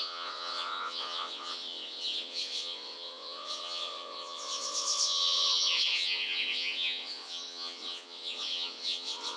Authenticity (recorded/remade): remade